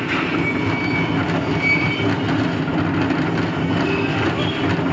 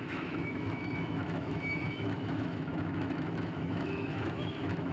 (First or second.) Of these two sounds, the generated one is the second